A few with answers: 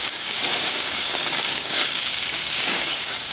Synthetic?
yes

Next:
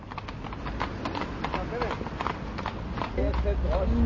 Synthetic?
no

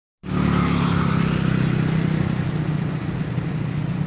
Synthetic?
no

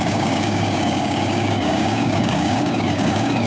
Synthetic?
yes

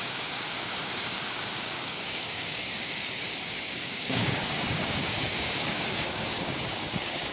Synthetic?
yes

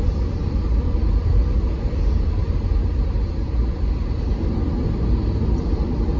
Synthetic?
no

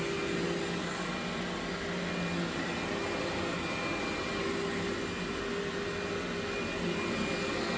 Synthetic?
no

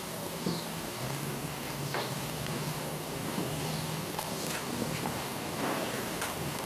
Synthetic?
yes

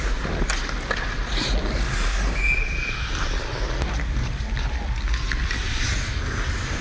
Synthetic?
no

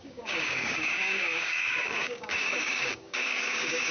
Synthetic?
yes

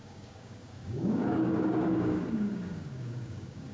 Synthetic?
yes